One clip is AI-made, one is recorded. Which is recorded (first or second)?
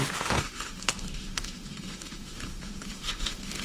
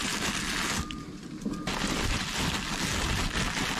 second